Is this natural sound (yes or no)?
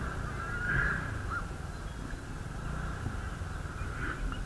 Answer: yes